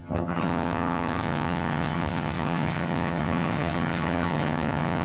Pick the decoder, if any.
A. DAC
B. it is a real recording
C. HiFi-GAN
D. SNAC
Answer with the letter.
C